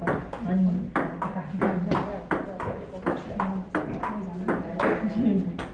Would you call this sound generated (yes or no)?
no